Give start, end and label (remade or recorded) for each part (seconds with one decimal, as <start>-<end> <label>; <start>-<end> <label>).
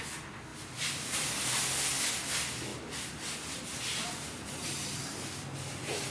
0.0-6.1 recorded